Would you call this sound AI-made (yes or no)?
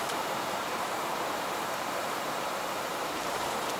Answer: yes